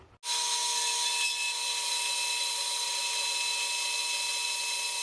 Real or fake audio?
real